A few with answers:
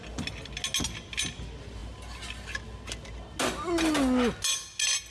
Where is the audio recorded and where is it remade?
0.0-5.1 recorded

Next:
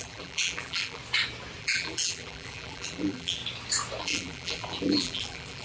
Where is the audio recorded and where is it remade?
0.0-1.0 remade; 1.0-1.6 recorded; 1.6-3.4 remade; 3.4-4.0 recorded; 4.0-5.6 remade

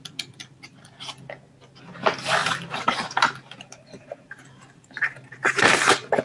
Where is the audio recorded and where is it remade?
0.0-2.4 recorded; 2.4-6.2 remade

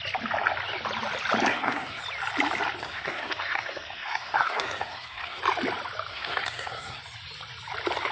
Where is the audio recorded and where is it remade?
0.0-1.5 recorded; 1.5-2.0 remade; 2.0-2.8 recorded; 2.8-5.4 remade; 5.4-6.1 recorded; 6.1-7.0 remade; 7.0-8.1 recorded

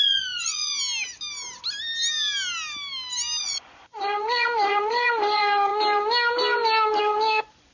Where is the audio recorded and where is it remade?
0.0-0.7 remade; 0.7-3.4 recorded; 3.4-5.7 remade; 5.7-7.0 recorded; 7.0-7.7 remade

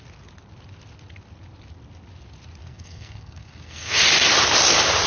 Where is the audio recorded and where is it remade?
0.0-2.6 recorded; 2.6-4.0 remade; 4.0-5.1 recorded